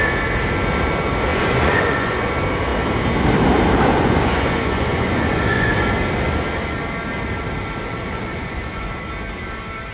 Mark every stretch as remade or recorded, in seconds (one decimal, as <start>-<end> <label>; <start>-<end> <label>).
0.0-1.3 recorded; 1.3-2.3 remade; 2.3-3.9 recorded; 3.9-5.7 remade; 5.7-8.3 recorded; 8.3-8.9 remade; 8.9-9.9 recorded